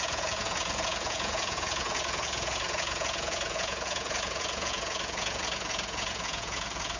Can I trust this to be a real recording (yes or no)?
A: no